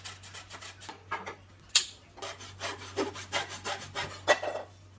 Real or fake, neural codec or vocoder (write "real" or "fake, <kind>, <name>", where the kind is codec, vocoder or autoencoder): real